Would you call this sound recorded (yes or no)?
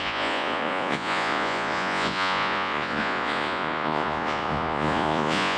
no